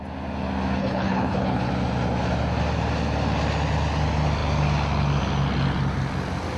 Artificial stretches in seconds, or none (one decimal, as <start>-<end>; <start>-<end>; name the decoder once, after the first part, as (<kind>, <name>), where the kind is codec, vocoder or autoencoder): 0.8-1.7 (codec, HILCodec)

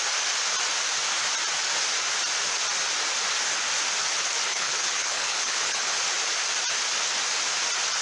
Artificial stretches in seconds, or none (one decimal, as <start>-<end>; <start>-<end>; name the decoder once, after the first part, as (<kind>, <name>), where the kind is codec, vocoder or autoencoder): 4.5-6.0 (codec, HILCodec)

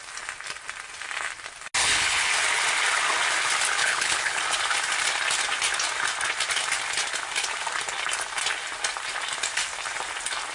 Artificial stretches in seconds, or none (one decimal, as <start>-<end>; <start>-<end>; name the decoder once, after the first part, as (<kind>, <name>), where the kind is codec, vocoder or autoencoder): 1.8-2.3 (codec, HILCodec); 3.8-4.4

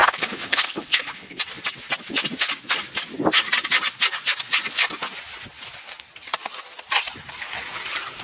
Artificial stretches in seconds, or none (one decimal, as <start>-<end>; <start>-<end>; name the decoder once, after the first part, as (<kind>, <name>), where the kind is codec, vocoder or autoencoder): 0.0-1.4 (codec, HILCodec)

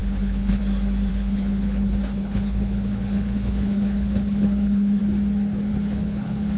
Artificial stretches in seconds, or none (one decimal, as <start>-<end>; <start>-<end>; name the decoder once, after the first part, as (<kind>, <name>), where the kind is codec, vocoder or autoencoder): 0.0-0.6 (codec, HILCodec); 1.1-5.0; 5.7-6.6

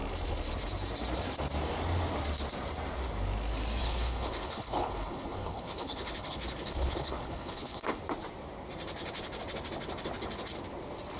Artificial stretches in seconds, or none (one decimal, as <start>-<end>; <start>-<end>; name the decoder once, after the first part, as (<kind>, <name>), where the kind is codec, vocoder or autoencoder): 3.8-8.0 (codec, HILCodec)